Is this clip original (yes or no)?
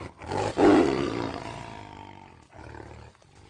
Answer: yes